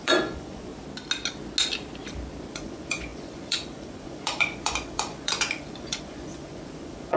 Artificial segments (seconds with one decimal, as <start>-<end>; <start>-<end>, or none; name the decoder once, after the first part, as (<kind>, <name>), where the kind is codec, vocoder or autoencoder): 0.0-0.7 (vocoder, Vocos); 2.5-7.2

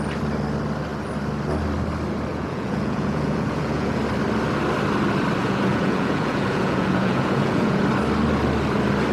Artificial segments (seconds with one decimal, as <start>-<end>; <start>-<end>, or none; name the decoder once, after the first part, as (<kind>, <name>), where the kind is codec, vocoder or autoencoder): 2.3-4.0 (vocoder, Vocos); 5.4-7.8

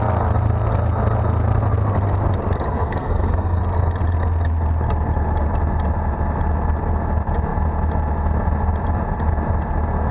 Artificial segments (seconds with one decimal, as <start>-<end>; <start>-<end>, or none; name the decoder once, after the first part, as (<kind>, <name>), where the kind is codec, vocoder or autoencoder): 2.7-3.6 (codec, SNAC)

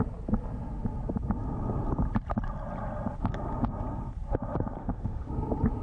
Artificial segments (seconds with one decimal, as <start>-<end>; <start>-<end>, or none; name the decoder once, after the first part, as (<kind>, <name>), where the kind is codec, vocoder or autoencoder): 4.8-5.3 (autoencoder, DAC-VAE)

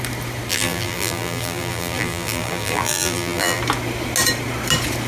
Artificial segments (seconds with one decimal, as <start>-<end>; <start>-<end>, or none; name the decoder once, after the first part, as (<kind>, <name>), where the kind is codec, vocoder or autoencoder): 0.5-3.6 (vocoder, BigVGAN v2)

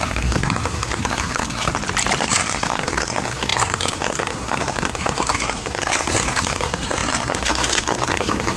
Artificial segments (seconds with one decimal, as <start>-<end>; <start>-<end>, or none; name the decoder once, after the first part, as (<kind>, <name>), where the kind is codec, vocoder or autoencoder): 0.0-1.7 (codec, SNAC); 2.2-8.6